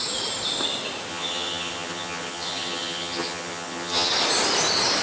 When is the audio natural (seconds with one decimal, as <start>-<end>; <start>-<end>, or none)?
0.0-1.1; 4.1-5.0